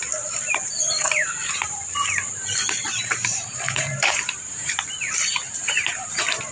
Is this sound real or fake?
fake